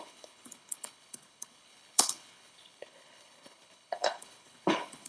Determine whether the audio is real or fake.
fake